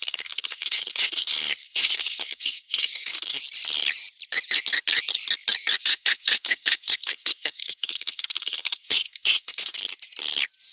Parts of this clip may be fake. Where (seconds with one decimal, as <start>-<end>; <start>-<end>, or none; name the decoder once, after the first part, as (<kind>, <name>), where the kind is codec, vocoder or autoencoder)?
0.0-3.4 (codec, SNAC); 5.8-9.8